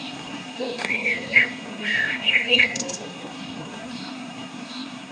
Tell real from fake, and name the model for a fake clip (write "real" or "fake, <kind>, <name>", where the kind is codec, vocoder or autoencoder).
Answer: fake, codec, SNAC